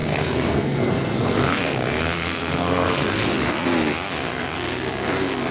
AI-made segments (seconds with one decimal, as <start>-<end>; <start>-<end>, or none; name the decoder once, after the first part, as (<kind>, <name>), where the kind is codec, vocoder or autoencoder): 0.0-3.3 (codec, SNAC)